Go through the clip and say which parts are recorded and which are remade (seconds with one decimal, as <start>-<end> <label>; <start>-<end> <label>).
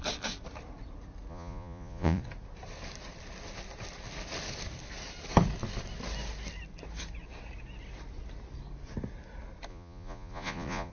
0.0-1.3 recorded; 1.3-2.2 remade; 2.2-9.7 recorded; 9.7-10.9 remade